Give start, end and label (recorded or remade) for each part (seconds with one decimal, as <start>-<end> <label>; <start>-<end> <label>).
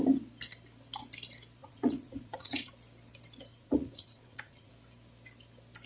0.0-1.6 recorded; 1.6-2.7 remade; 2.7-3.5 recorded; 3.5-4.7 remade; 4.7-5.9 recorded